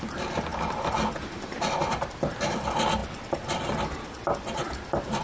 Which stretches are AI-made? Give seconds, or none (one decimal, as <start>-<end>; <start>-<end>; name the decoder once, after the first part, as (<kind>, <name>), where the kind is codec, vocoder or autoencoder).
none